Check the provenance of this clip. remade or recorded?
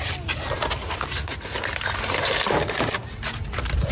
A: recorded